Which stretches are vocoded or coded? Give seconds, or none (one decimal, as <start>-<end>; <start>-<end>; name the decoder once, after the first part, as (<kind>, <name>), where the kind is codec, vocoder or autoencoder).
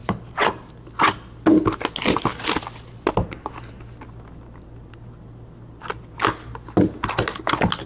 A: 0.0-0.7 (vocoder, BigVGAN v2)